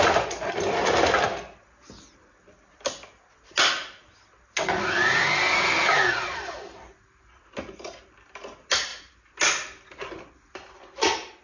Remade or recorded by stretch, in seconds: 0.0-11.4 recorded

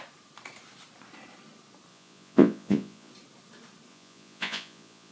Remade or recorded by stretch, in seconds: 0.0-1.9 recorded; 1.9-3.1 remade; 3.1-3.9 recorded; 3.9-5.1 remade

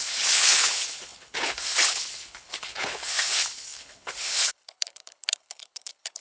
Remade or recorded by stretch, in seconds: 0.0-6.2 remade

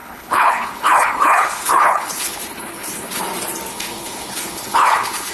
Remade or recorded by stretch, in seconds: 0.0-3.2 remade; 3.2-3.7 recorded; 3.7-5.3 remade

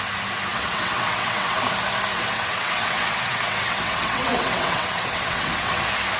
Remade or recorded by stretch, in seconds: 0.0-0.5 recorded; 0.5-1.6 remade; 1.6-2.1 recorded; 2.1-5.8 remade; 5.8-6.2 recorded

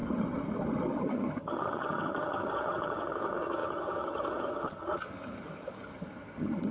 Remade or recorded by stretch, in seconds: 0.0-1.0 recorded; 1.0-6.7 remade

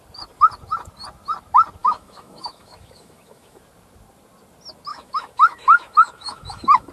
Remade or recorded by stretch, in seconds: 0.0-1.8 recorded; 1.8-3.6 remade; 3.6-4.9 recorded; 4.9-6.9 remade